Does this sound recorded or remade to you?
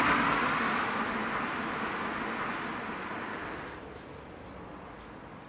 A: recorded